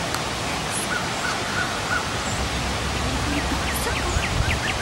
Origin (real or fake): real